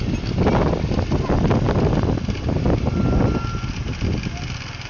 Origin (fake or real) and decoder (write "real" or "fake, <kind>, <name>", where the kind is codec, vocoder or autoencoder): real